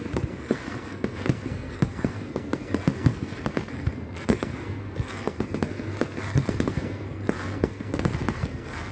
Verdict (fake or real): fake